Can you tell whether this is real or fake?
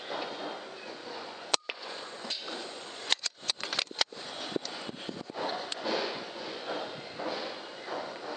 fake